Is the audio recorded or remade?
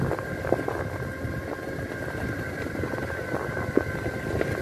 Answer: recorded